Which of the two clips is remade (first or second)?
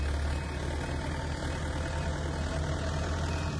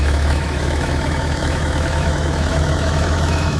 second